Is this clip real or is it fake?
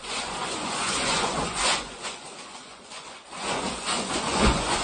fake